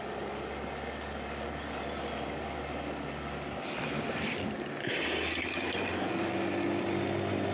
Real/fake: real